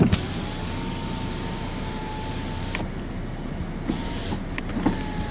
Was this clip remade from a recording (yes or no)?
no